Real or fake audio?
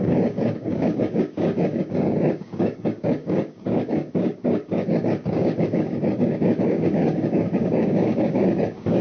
fake